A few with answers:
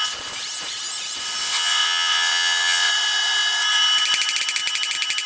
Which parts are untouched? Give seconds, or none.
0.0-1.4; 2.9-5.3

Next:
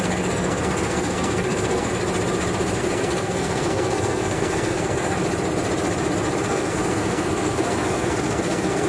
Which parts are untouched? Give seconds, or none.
1.9-2.8; 5.2-6.4

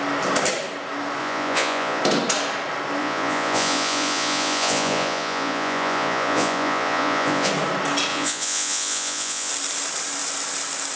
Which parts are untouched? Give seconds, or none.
0.0-1.2; 2.0-3.0; 7.5-8.1; 9.5-11.0

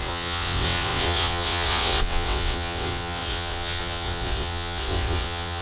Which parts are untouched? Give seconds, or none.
none

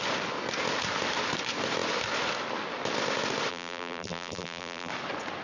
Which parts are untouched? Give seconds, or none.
0.0-3.5; 4.9-5.4

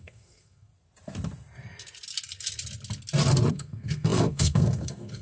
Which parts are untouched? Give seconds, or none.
0.7-3.5

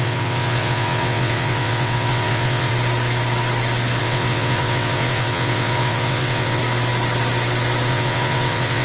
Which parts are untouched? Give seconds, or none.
2.7-4.0; 6.6-7.9

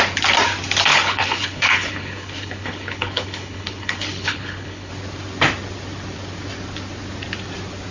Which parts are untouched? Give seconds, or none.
0.0-0.9; 4.9-7.9